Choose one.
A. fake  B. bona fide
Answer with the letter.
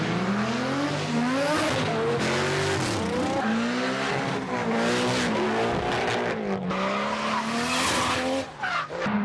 B